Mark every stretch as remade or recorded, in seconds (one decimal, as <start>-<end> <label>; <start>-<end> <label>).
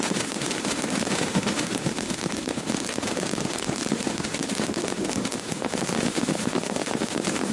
0.0-7.5 remade